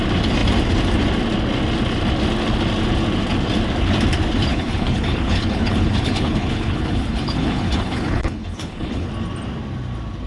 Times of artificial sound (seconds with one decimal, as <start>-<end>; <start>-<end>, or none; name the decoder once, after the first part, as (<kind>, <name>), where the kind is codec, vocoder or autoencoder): 4.5-9.1 (codec, HILCodec)